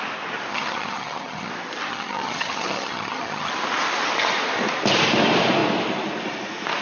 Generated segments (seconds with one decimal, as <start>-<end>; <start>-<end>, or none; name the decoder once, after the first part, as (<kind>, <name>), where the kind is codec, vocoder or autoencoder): 0.5-1.5 (vocoder, HiFi-GAN); 1.9-3.5